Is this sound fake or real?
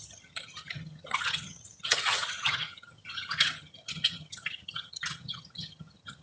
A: fake